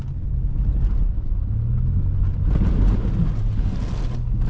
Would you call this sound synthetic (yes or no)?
no